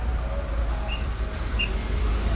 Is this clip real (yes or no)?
yes